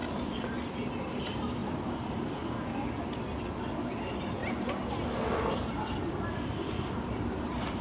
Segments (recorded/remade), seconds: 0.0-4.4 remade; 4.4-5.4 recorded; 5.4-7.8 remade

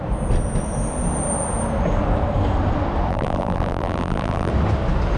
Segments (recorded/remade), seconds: 0.0-3.1 recorded; 3.1-4.5 remade; 4.5-5.2 recorded

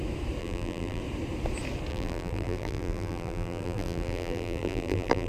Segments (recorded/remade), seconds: 0.0-0.4 recorded; 0.4-1.0 remade; 1.0-1.9 recorded; 1.9-5.3 remade

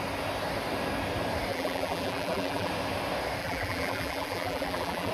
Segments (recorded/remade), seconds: 0.0-1.5 recorded; 1.5-2.7 remade; 2.7-3.4 recorded; 3.4-5.1 remade

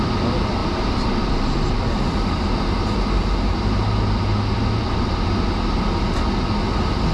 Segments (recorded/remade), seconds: 0.0-0.6 recorded; 0.6-2.4 remade; 2.4-7.1 recorded

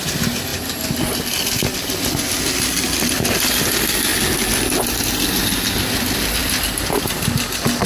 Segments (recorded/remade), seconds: 0.0-0.5 remade; 0.5-2.2 recorded; 2.2-4.1 remade; 4.1-5.4 recorded; 5.4-6.4 remade; 6.4-7.0 recorded; 7.0-7.9 remade